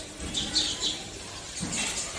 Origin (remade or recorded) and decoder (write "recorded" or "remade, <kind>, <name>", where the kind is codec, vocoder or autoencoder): recorded